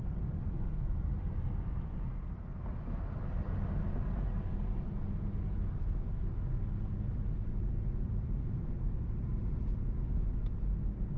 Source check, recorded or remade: recorded